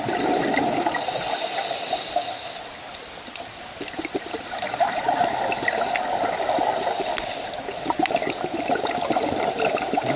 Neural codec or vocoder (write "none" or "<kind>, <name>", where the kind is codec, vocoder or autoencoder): none